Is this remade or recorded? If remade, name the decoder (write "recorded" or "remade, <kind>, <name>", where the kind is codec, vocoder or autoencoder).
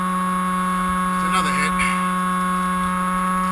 recorded